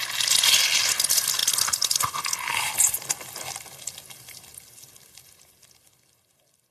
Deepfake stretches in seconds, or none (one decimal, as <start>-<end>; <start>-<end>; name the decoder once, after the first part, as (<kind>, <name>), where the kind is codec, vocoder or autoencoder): none